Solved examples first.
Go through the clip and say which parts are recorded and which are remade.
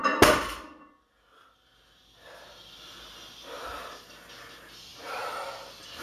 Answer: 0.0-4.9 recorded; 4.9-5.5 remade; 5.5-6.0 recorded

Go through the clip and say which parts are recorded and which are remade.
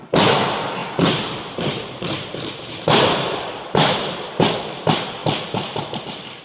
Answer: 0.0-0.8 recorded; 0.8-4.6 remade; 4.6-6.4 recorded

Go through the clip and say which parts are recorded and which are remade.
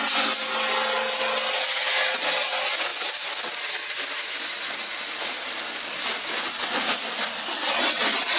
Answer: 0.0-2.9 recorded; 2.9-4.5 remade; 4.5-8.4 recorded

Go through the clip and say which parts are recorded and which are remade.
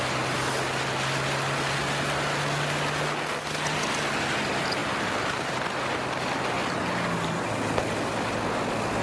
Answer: 0.0-9.0 recorded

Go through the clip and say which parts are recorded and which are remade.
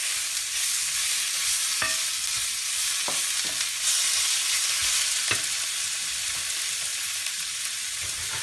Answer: 0.0-2.1 recorded; 2.1-3.1 remade; 3.1-4.8 recorded; 4.8-5.9 remade; 5.9-6.9 recorded; 6.9-7.6 remade; 7.6-8.4 recorded